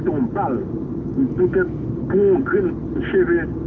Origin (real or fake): real